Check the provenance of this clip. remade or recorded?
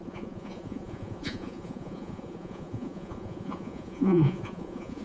remade